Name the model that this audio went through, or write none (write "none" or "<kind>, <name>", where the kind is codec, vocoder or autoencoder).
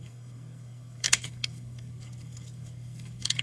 codec, SNAC